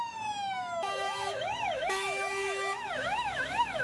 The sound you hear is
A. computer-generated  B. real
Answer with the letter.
A